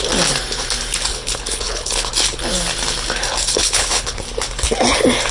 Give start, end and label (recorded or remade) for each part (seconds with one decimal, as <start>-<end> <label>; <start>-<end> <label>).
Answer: 0.0-1.1 recorded; 1.1-2.1 remade; 2.1-3.6 recorded; 3.6-4.2 remade; 4.2-5.3 recorded